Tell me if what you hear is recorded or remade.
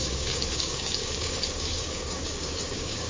remade